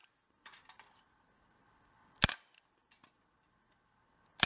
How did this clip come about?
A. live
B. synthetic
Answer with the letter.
A